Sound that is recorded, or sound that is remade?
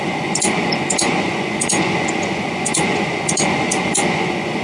remade